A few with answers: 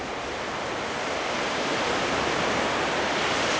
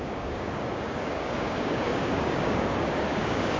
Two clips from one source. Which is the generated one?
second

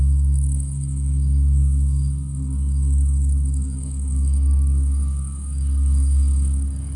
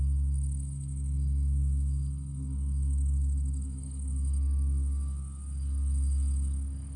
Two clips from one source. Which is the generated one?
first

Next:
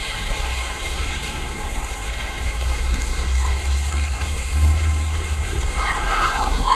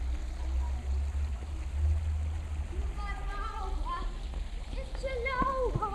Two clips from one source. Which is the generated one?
first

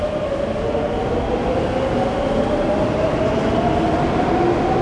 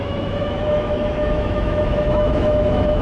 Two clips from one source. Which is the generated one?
second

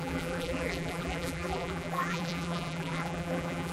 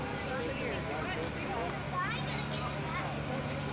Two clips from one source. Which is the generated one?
first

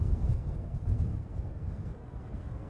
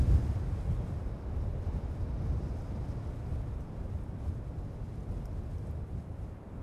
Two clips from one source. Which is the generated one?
first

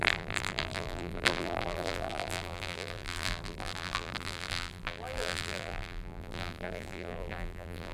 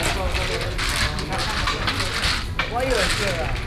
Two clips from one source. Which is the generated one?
first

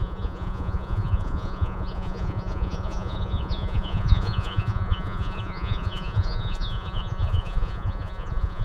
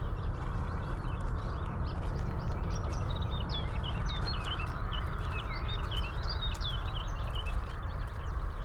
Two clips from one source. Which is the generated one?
first